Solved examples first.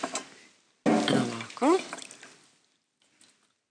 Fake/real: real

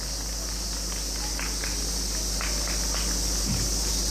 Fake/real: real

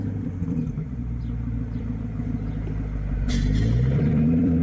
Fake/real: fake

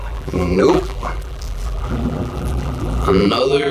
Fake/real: fake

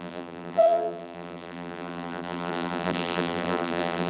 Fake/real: fake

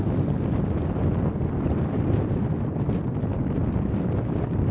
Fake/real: fake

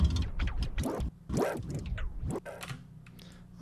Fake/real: real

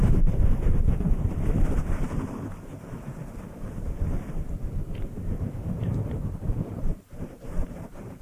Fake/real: fake